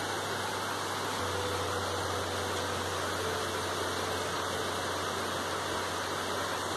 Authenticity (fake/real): real